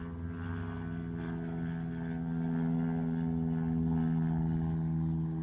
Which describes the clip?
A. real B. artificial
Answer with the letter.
A